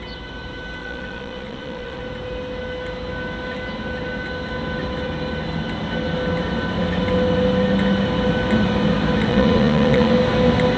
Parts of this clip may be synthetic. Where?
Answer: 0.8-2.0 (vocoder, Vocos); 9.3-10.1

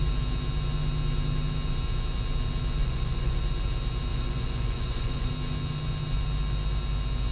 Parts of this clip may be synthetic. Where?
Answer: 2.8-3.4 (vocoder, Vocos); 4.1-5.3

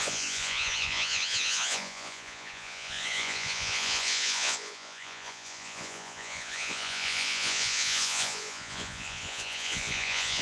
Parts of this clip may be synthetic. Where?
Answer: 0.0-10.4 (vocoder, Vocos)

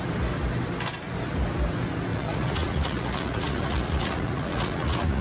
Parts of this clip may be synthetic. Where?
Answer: 2.1-5.2 (vocoder, Vocos)

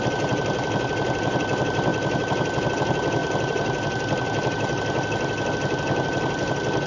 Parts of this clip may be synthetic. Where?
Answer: none